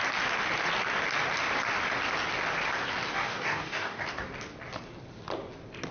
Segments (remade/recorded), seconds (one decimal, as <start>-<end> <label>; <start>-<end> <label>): 0.0-3.1 recorded; 3.1-4.0 remade; 4.0-5.9 recorded